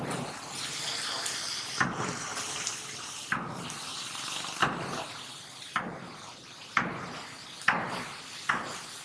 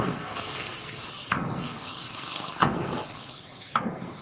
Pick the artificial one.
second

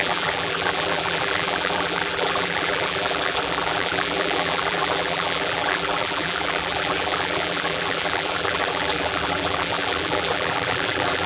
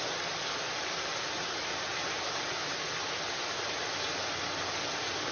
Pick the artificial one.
first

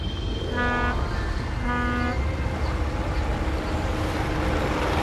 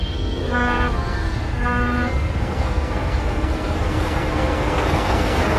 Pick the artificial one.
second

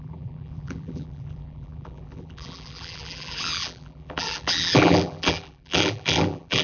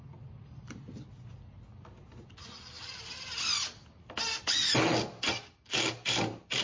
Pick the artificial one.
first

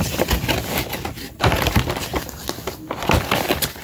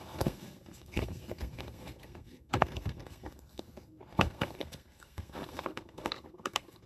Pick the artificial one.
second